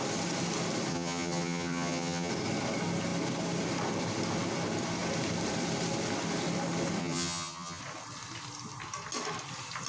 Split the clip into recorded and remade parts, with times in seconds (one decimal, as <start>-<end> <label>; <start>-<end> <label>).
0.0-0.9 recorded; 0.9-2.3 remade; 2.3-7.0 recorded; 7.0-7.8 remade; 7.8-9.9 recorded